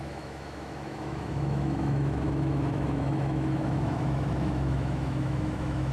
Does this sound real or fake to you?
fake